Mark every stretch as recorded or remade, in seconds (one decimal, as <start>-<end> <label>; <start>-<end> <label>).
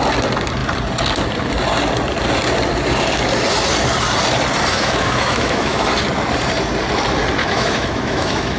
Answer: 0.0-4.7 recorded; 4.7-5.9 remade; 5.9-7.4 recorded; 7.4-8.6 remade